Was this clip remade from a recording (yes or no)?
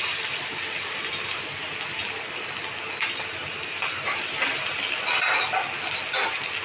no